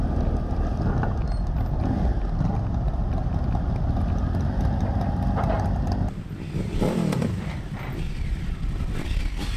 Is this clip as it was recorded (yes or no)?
yes